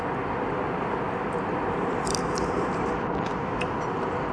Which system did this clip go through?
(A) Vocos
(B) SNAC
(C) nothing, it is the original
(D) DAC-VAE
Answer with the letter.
C